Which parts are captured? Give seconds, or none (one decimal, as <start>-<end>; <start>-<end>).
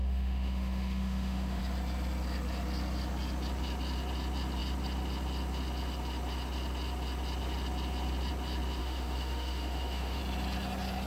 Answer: 1.6-8.8; 10.2-11.1